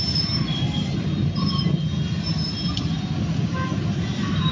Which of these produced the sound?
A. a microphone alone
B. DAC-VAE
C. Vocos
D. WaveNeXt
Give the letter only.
A